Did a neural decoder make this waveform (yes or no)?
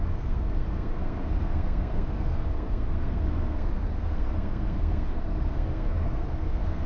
yes